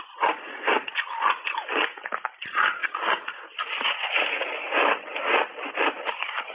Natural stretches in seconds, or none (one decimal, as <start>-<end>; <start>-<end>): 0.0-6.5